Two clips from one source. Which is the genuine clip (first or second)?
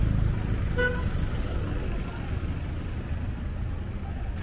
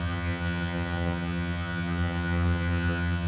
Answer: first